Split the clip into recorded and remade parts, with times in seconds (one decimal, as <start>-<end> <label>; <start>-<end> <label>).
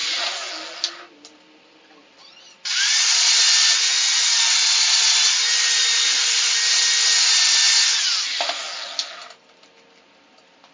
0.0-0.5 remade; 0.5-10.7 recorded